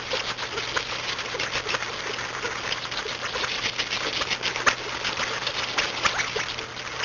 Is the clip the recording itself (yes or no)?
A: yes